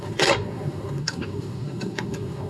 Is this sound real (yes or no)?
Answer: no